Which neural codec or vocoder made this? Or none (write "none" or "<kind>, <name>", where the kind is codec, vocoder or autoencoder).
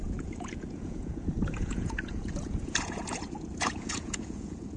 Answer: vocoder, Vocos